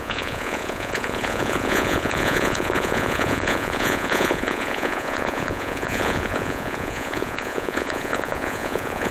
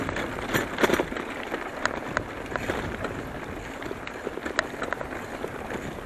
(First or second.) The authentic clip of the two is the second